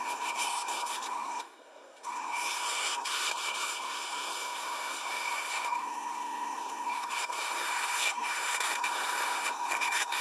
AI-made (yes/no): yes